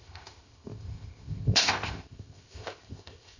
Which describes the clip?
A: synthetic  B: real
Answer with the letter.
A